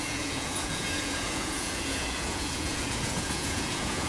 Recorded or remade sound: remade